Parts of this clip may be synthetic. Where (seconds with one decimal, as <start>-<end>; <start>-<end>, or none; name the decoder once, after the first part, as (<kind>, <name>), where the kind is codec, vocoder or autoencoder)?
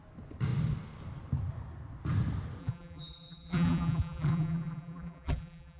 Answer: 2.6-5.8 (vocoder, BigVGAN v2)